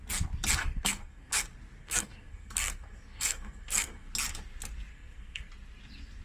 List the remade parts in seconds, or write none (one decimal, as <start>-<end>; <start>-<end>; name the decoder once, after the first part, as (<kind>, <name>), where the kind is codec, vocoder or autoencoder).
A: 0.6-1.3 (codec, SNAC); 1.8-4.1; 4.9-5.5